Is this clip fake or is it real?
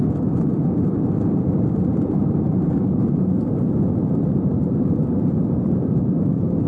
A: fake